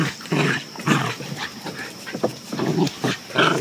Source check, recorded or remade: remade